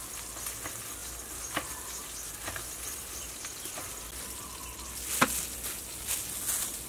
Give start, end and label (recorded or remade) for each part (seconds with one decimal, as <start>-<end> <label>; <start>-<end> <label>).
0.0-6.9 recorded